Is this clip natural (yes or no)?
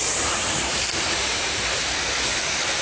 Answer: no